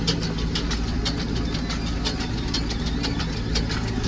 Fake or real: real